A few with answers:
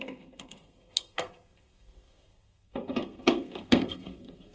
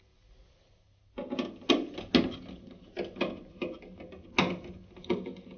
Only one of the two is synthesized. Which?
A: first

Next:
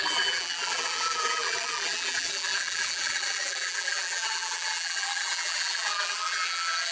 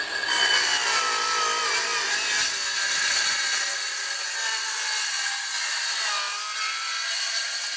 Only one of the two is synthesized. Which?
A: first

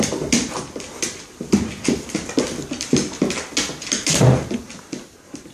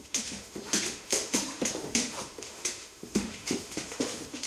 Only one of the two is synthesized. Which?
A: second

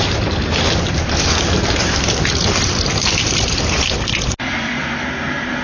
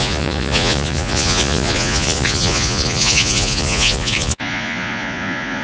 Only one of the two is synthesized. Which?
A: second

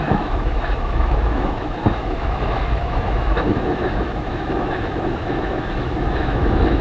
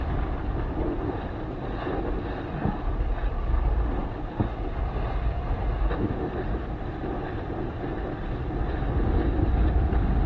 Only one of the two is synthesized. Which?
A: first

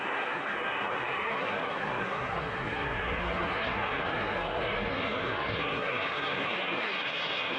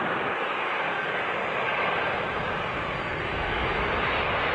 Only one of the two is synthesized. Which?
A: first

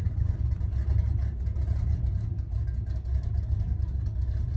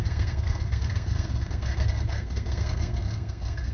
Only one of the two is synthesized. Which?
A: second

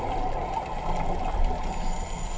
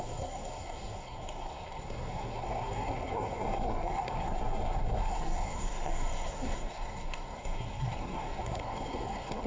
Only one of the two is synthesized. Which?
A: second